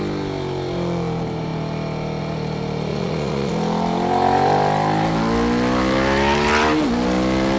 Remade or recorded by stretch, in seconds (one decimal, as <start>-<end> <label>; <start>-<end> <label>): 0.0-2.9 recorded; 2.9-3.5 remade; 3.5-7.6 recorded